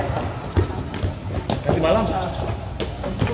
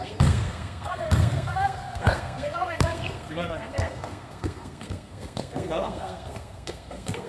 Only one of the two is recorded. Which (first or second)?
first